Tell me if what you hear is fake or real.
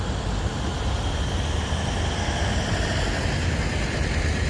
real